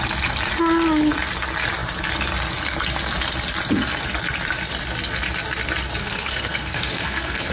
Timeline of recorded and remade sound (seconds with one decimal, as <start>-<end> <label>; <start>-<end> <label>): 0.0-6.0 recorded; 6.0-7.5 remade